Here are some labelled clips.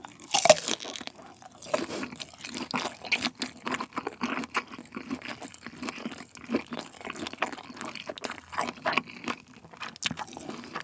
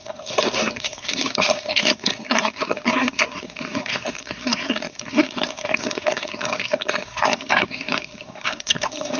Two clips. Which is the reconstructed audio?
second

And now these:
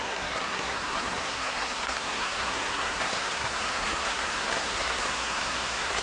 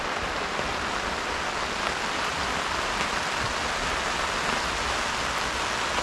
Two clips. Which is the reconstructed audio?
first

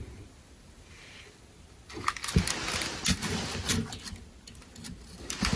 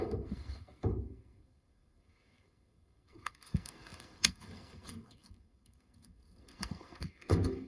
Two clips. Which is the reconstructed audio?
second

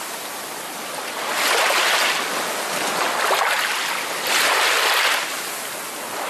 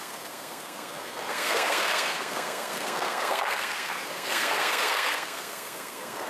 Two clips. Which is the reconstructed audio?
second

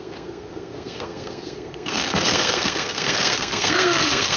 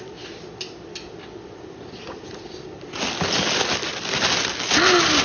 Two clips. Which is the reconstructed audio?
first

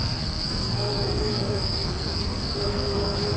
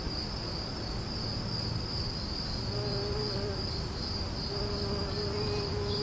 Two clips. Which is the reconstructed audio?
first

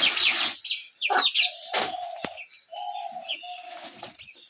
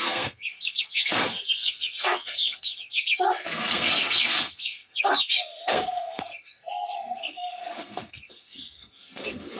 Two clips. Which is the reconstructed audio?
second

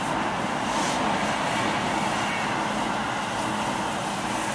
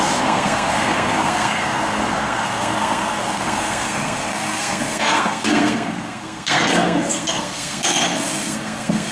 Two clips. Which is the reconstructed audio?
second